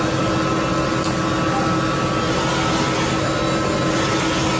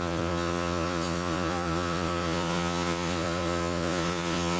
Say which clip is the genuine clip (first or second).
first